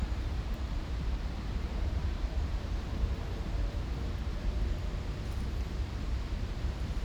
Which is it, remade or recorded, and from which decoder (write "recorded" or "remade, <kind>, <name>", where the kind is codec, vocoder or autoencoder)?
remade, vocoder, BigVGAN v2